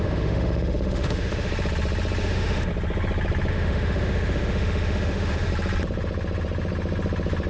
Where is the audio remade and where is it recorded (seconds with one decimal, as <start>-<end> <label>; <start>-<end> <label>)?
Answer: 0.0-1.5 remade; 1.5-2.2 recorded; 2.2-2.7 remade; 2.7-3.5 recorded; 3.5-5.5 remade; 5.5-7.5 recorded